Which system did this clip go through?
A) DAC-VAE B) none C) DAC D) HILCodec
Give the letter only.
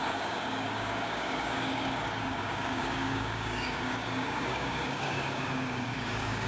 C